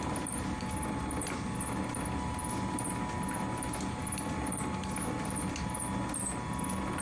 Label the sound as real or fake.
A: real